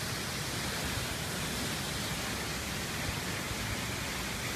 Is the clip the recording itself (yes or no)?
yes